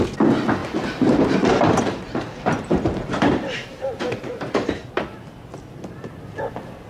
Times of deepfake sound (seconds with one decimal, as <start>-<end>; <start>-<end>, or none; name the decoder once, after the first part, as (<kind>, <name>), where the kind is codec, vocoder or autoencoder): 0.6-4.7 (vocoder, BigVGAN v2)